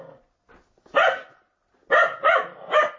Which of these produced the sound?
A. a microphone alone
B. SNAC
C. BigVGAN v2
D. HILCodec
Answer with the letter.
A